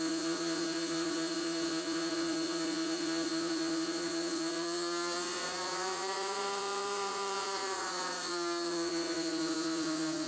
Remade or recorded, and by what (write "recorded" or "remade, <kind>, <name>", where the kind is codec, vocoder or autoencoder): remade, vocoder, Vocos